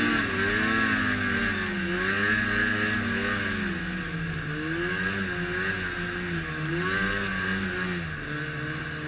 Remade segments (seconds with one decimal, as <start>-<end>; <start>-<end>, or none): none